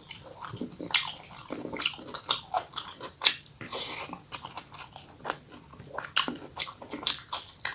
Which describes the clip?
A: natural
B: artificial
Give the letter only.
A